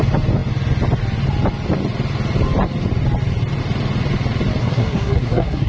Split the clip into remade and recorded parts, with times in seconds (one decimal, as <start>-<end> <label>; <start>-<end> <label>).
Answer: 0.0-4.6 recorded; 4.6-5.7 remade

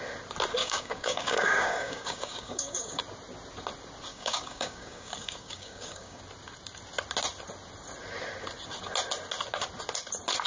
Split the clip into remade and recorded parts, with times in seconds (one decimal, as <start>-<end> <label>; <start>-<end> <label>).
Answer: 0.0-0.6 recorded; 0.6-3.0 remade; 3.0-4.1 recorded; 4.1-6.2 remade; 6.2-10.5 recorded

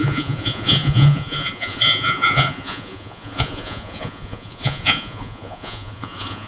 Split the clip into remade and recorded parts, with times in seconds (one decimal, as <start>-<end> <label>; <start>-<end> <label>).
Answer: 0.0-6.5 remade

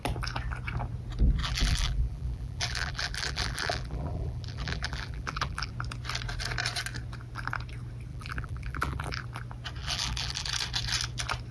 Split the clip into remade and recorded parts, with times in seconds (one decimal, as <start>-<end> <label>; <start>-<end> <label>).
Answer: 0.0-1.4 recorded; 1.4-5.7 remade; 5.7-8.1 recorded; 8.1-9.2 remade; 9.2-9.8 recorded; 9.8-10.5 remade; 10.5-11.5 recorded